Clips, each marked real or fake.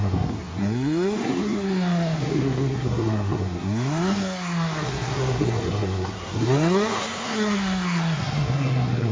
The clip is fake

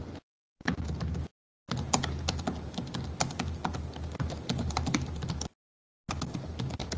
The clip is real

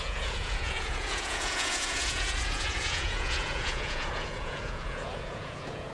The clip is fake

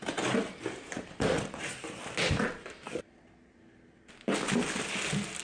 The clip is real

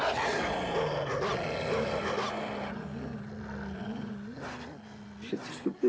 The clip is real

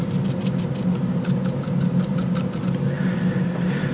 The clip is real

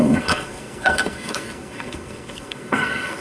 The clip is fake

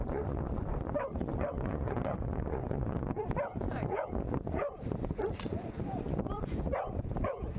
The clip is fake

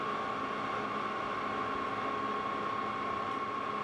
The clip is real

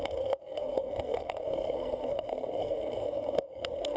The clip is fake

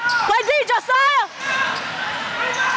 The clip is real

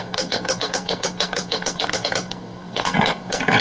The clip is fake